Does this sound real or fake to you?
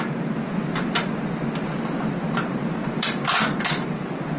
real